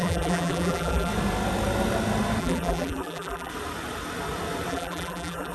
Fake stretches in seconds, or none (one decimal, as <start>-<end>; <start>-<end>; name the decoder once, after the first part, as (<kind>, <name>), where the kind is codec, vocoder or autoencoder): 0.0-1.1 (vocoder, BigVGAN v2); 2.4-3.5; 4.7-5.5